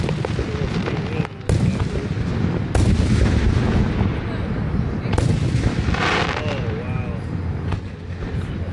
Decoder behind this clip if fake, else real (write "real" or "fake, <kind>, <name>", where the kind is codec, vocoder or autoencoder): real